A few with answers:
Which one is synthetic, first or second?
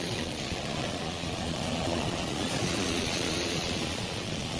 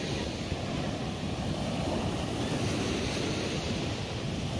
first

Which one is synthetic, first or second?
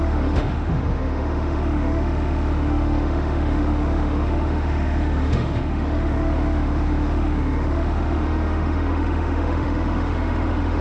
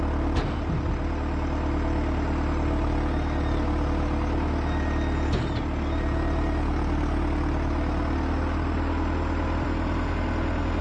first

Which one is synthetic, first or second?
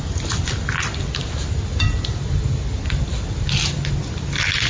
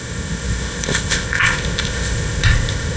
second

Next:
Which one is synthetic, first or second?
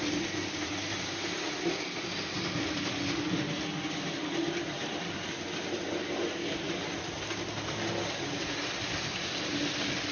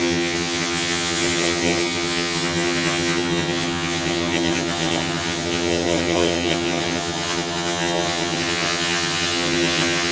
second